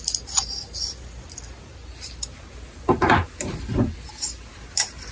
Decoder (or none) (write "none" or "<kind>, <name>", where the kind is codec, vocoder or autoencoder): none